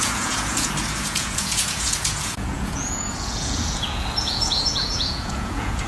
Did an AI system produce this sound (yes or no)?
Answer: yes